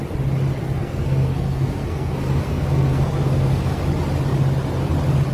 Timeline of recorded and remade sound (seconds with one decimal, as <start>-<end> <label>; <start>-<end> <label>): 0.0-0.6 recorded; 0.6-3.8 remade; 3.8-5.3 recorded